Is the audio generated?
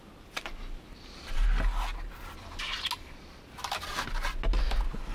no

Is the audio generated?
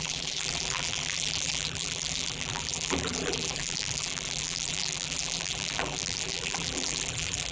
yes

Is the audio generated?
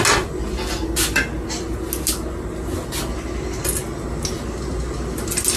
no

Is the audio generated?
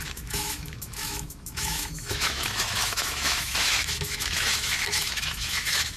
yes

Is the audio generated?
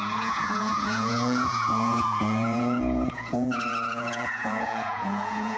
yes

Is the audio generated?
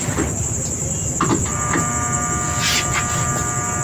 no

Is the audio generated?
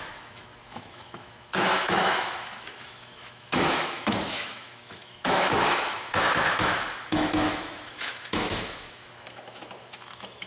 yes